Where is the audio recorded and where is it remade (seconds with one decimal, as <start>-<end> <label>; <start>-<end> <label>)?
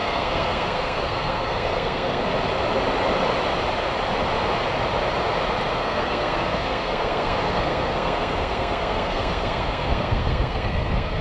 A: 0.0-2.2 remade; 2.2-5.8 recorded; 5.8-11.2 remade